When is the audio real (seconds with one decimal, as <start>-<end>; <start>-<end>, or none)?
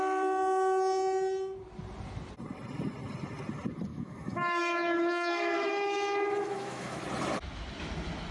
0.0-3.9; 7.0-8.3